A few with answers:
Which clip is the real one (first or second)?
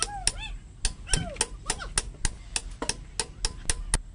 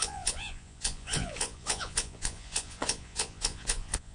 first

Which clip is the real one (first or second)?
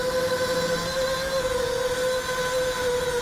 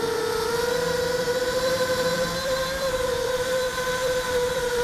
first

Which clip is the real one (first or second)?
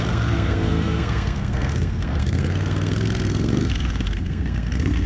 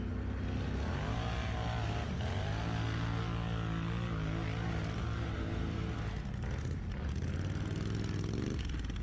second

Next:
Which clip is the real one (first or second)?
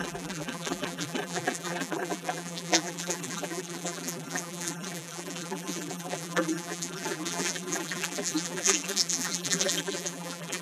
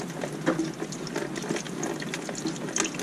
second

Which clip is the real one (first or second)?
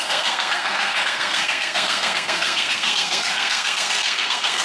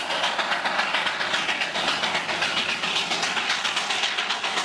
second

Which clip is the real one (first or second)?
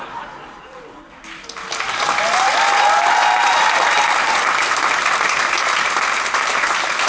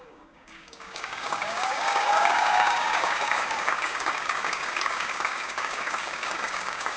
first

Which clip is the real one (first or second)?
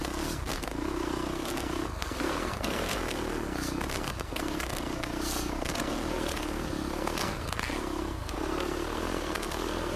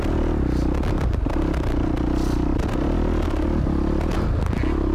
second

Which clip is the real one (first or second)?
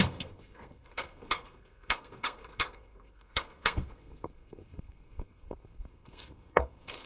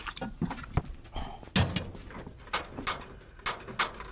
second